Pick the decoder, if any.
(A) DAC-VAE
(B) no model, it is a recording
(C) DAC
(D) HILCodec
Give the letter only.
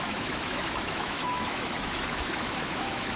A